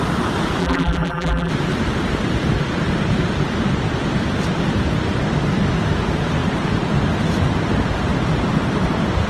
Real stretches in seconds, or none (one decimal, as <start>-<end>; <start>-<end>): 0.0-0.6; 1.5-9.3